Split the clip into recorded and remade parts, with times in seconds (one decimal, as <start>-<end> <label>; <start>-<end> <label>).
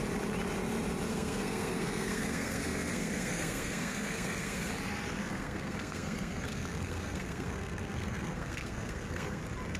0.0-1.1 recorded; 1.1-4.7 remade; 4.7-5.2 recorded; 5.2-9.4 remade; 9.4-9.8 recorded